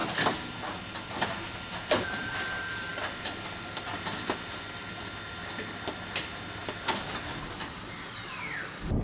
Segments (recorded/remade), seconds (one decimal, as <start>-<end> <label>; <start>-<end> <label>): 0.0-1.9 recorded; 1.9-2.9 remade; 2.9-6.6 recorded; 6.6-9.0 remade